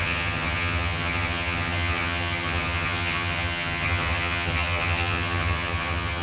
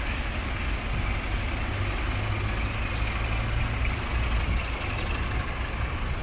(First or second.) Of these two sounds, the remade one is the first